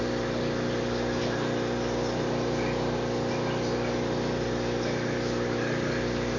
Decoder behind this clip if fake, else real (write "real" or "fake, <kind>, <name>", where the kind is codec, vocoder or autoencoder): real